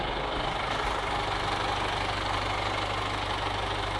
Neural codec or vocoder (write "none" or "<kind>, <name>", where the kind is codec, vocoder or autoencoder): none